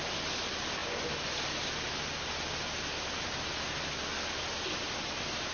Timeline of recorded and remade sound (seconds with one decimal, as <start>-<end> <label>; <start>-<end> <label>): 0.0-5.5 recorded